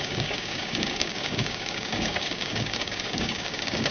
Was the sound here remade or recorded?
remade